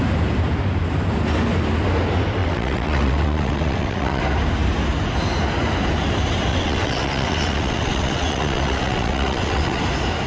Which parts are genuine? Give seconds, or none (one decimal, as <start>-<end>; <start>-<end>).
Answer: 0.0-2.4; 4.2-6.5; 9.8-10.3